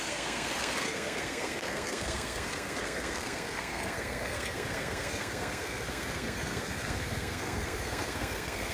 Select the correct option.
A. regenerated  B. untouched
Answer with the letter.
A